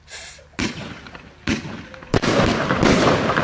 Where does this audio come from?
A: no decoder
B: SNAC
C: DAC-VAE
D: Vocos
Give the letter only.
A